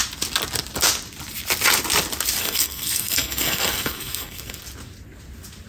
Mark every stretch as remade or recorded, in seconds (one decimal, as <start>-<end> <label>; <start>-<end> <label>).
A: 0.0-2.4 recorded; 2.4-4.6 remade; 4.6-5.7 recorded